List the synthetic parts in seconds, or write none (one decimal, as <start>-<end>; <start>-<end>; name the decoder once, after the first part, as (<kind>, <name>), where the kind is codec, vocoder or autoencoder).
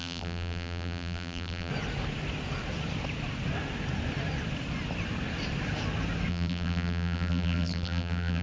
0.0-1.7 (vocoder, BigVGAN v2); 6.3-8.4